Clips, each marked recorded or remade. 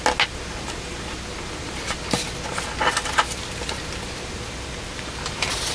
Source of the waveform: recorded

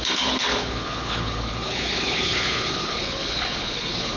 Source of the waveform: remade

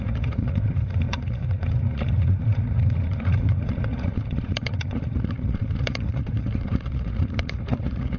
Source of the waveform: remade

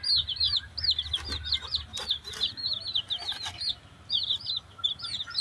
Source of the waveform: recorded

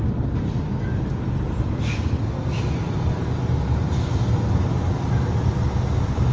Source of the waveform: recorded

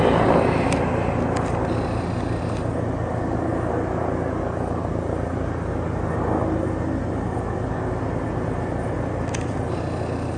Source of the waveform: recorded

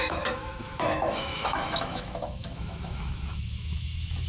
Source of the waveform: remade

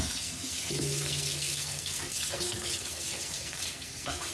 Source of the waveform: remade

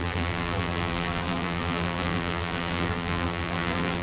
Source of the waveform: remade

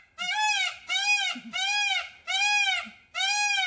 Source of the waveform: recorded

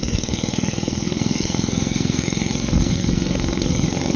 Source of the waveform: remade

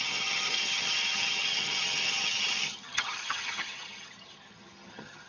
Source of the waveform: remade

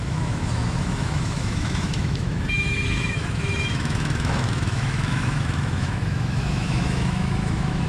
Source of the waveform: remade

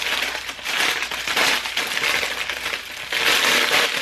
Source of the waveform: remade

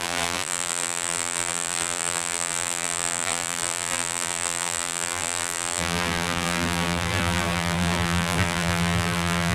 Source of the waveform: remade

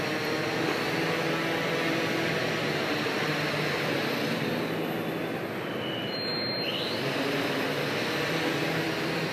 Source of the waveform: recorded